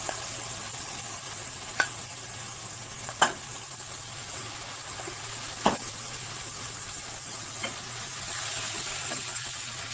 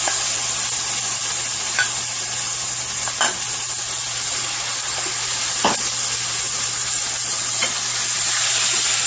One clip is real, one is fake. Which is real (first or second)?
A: second